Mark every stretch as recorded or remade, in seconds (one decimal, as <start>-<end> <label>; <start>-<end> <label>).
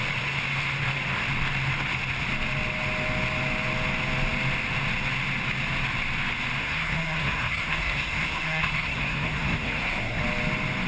0.0-6.6 recorded; 6.6-10.2 remade; 10.2-10.9 recorded